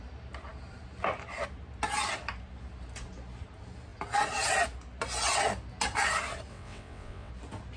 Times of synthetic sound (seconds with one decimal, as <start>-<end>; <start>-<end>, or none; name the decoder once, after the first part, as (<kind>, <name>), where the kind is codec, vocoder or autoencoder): 6.5-7.3 (vocoder, WaveNeXt)